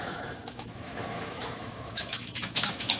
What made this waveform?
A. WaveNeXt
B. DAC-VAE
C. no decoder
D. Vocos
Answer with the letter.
B